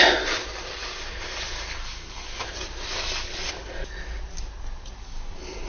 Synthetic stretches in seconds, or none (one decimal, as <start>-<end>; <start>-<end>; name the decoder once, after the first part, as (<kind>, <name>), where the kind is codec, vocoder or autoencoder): none